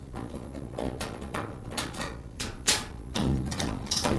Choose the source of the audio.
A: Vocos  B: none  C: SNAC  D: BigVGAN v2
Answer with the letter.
A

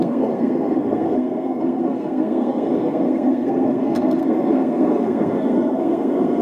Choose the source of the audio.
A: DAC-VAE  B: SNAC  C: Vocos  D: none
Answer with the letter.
B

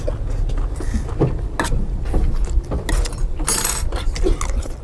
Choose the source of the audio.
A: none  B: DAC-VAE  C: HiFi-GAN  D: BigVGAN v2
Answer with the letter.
A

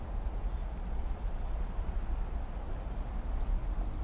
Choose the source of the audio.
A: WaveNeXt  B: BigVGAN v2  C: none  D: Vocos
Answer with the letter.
C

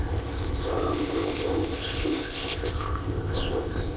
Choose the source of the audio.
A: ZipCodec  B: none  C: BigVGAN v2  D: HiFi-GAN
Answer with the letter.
A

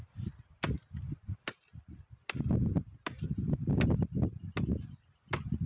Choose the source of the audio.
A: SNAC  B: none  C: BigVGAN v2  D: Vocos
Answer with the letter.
B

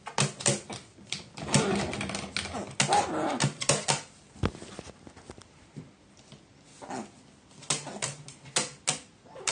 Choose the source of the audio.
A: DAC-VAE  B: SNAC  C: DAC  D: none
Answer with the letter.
D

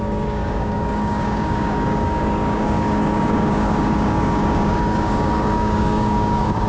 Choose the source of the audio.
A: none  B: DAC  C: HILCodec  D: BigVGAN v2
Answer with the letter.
B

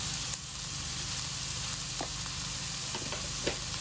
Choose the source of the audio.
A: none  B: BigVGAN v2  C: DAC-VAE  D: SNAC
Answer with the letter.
A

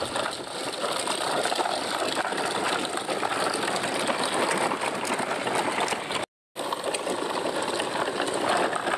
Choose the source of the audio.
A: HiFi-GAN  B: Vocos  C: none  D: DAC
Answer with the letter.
C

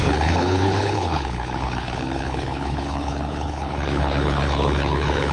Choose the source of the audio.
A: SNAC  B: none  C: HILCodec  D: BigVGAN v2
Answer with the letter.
C